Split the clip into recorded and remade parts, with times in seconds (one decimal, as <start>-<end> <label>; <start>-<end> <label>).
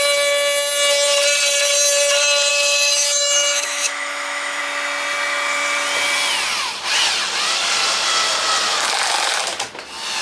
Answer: 0.0-2.5 recorded; 2.5-4.6 remade; 4.6-10.2 recorded